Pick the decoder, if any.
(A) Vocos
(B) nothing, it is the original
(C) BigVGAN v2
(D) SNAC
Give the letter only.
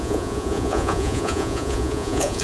A